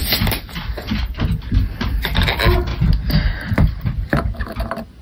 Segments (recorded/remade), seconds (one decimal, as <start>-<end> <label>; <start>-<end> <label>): 0.0-5.0 recorded

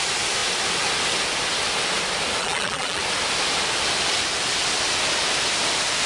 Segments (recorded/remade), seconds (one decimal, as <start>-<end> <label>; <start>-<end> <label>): 0.0-2.4 recorded; 2.4-3.0 remade; 3.0-6.1 recorded

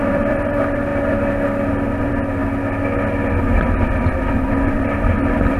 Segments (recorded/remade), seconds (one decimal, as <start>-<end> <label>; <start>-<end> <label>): 0.0-0.9 remade; 0.9-2.0 recorded; 2.0-2.4 remade; 2.4-3.8 recorded; 3.8-5.6 remade

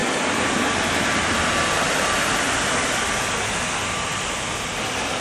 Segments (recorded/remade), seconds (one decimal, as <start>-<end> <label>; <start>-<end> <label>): 0.0-3.1 remade; 3.1-5.2 recorded